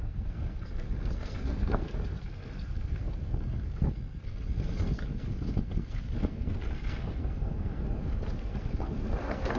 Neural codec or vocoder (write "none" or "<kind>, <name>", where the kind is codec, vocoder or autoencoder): codec, SNAC